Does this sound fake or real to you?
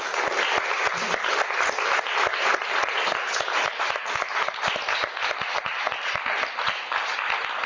real